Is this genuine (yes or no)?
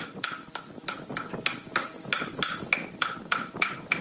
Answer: yes